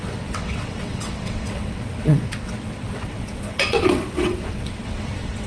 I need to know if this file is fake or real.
fake